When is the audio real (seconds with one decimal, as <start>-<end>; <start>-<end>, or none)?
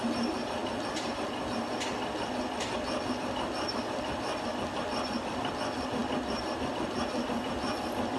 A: 0.0-8.2